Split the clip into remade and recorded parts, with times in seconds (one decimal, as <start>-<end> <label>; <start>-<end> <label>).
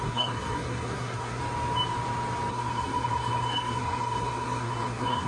0.0-1.4 remade; 1.4-2.5 recorded; 2.5-5.3 remade